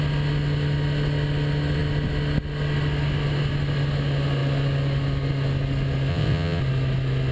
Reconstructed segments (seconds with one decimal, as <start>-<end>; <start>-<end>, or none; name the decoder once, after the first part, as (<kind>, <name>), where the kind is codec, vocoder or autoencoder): 6.1-6.6 (vocoder, WaveNeXt)